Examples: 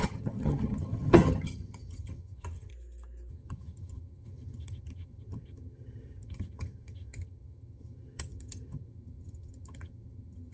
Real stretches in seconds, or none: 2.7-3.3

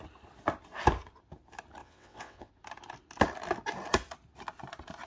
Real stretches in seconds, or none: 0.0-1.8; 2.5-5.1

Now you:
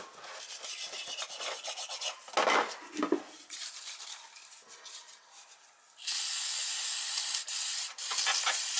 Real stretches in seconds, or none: 0.0-8.8

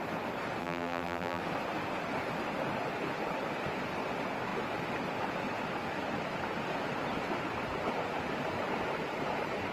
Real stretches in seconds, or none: 0.0-0.6; 1.4-9.7